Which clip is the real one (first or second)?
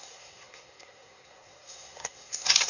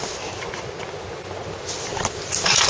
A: second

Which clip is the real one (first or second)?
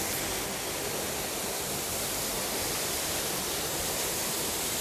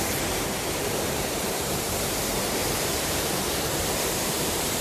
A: first